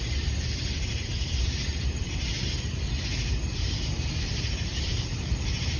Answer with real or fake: fake